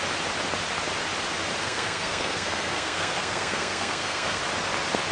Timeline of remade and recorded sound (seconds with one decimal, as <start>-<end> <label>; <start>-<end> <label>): 0.0-1.6 recorded; 1.6-4.4 remade; 4.4-5.1 recorded